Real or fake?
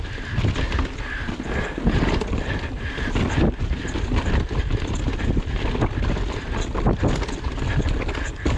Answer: real